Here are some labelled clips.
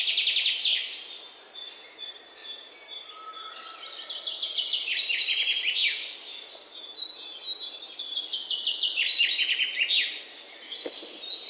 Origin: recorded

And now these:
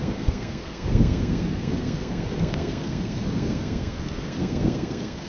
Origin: remade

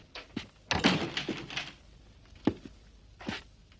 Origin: recorded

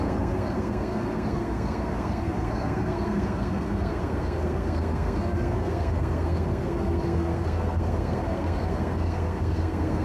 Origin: remade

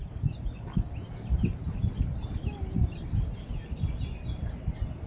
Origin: recorded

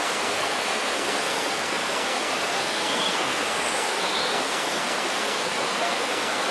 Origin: remade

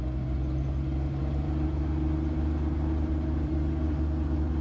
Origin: recorded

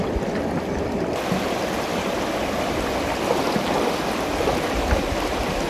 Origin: recorded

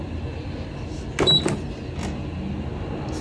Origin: recorded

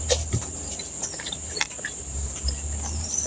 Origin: remade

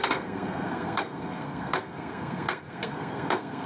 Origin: remade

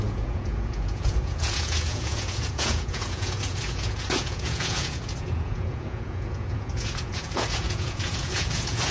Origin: remade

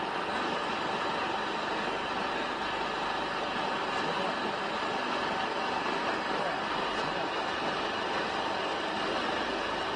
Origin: recorded